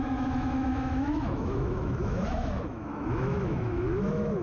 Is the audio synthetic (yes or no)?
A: yes